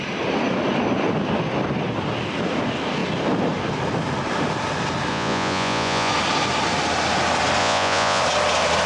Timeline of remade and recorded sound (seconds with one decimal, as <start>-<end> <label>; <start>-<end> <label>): 0.0-5.1 recorded; 5.1-6.1 remade; 6.1-7.6 recorded; 7.6-8.2 remade; 8.2-8.9 recorded